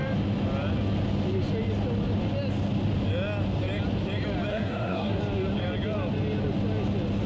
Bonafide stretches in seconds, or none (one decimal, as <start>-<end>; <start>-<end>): 0.0-4.5; 5.2-7.3